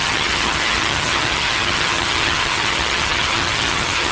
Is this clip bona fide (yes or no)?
no